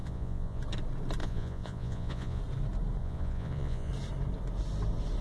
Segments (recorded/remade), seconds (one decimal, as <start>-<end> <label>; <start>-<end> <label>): 0.0-0.6 remade; 0.6-1.2 recorded; 1.2-2.4 remade; 2.4-3.0 recorded; 3.0-3.9 remade; 3.9-5.2 recorded